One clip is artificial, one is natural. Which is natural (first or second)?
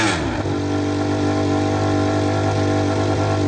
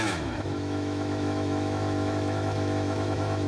first